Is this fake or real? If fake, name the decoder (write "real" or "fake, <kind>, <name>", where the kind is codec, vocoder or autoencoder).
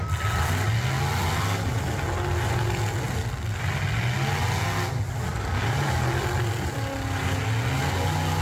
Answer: real